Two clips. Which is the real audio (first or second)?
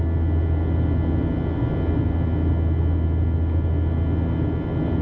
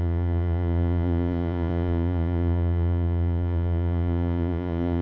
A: first